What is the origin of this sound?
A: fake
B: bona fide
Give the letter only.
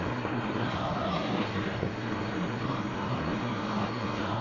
A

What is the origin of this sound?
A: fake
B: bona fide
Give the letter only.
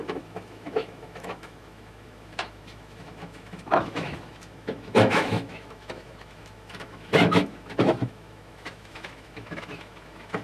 A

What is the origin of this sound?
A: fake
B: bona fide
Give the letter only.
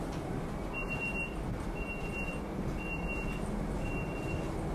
B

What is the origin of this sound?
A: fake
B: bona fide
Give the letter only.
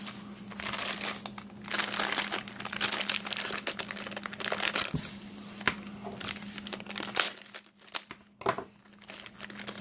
B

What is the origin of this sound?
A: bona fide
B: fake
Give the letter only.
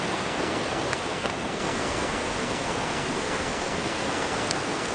B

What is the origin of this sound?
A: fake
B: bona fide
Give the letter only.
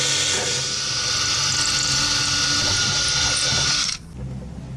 B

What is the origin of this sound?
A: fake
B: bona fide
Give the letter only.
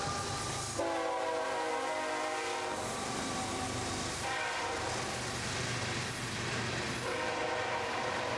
B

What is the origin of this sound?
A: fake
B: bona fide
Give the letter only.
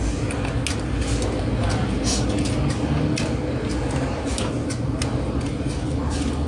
B